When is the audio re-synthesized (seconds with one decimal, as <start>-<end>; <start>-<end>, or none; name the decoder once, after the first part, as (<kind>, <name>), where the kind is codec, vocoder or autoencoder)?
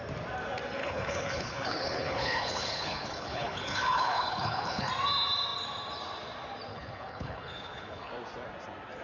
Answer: 0.8-4.9 (codec, HILCodec); 6.7-8.1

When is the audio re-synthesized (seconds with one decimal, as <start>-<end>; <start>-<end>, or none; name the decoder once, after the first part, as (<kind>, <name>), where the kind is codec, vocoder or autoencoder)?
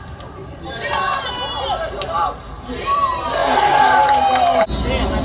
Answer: none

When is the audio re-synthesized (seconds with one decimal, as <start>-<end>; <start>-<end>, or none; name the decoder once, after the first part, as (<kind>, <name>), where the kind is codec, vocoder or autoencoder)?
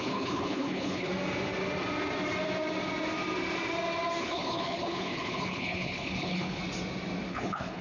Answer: 0.0-1.1 (codec, HILCodec); 4.2-6.6; 7.3-7.8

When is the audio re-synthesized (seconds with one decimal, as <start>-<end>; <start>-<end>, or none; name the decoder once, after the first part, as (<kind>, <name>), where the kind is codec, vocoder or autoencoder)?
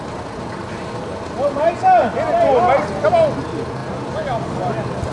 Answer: none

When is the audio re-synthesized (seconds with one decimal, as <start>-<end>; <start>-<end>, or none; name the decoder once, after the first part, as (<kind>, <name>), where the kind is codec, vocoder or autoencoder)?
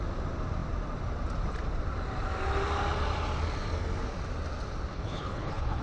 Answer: 4.9-5.8 (codec, HILCodec)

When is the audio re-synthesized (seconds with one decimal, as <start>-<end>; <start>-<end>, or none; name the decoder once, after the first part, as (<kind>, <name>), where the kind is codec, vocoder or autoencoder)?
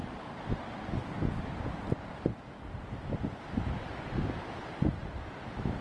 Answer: none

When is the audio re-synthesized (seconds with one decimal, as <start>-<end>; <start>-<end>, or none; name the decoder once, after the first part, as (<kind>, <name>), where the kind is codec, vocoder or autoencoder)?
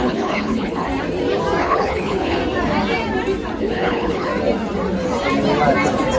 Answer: 0.0-0.9 (codec, HILCodec); 1.6-2.4; 3.6-4.3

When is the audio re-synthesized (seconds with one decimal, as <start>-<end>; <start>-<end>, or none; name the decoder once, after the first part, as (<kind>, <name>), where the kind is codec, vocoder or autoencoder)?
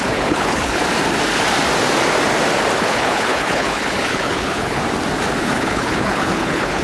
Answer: 0.0-0.8 (codec, HILCodec); 2.8-4.8; 5.4-6.8